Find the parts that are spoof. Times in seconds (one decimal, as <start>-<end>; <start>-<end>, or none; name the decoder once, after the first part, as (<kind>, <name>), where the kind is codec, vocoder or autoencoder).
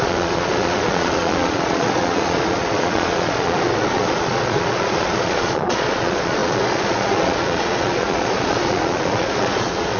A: 0.0-10.0 (vocoder, Vocos)